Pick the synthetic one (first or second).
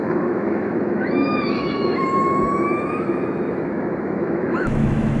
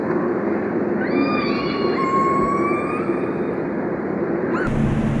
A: first